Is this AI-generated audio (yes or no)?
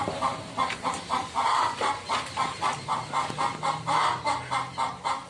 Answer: no